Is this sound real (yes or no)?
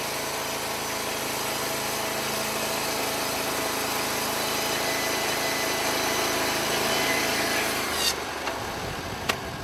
yes